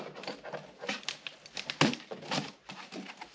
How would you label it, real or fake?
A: real